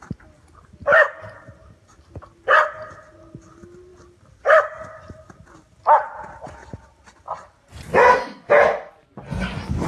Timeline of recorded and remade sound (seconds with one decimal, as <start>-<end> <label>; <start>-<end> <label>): 0.0-9.9 recorded